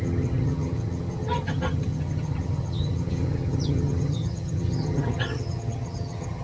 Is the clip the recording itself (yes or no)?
no